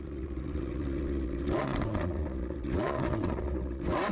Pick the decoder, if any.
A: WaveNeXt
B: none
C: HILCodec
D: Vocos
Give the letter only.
A